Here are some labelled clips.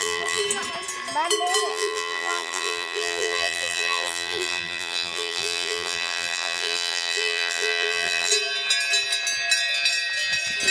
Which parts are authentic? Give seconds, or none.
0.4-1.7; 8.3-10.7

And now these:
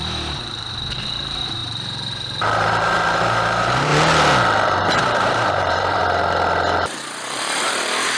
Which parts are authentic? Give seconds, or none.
3.9-5.0; 6.0-7.0

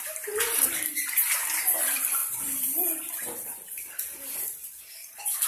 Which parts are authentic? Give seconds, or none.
none

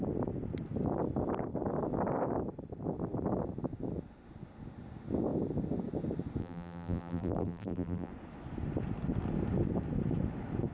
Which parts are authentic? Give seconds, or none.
0.0-6.4; 8.1-10.7

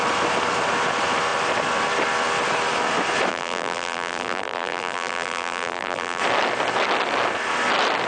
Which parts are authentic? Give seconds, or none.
0.0-3.3; 6.2-8.1